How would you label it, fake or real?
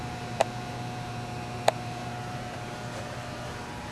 fake